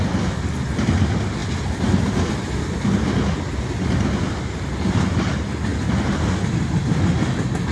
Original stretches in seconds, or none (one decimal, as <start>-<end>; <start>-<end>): 0.0-7.7